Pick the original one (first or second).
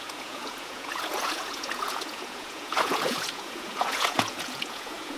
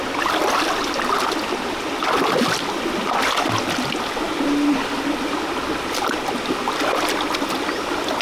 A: second